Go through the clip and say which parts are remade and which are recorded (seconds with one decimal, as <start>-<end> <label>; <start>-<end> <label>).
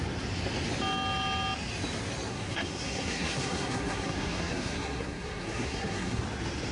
0.0-2.3 recorded; 2.3-6.2 remade; 6.2-6.7 recorded